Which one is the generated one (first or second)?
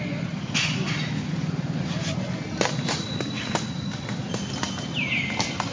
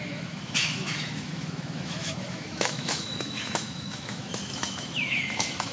second